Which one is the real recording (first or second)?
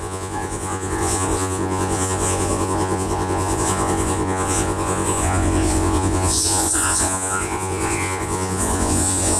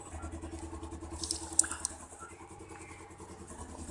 second